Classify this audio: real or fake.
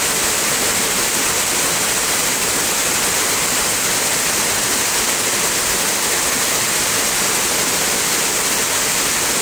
real